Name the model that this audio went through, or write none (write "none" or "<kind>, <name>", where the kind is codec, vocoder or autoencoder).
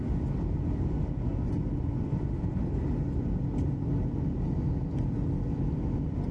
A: none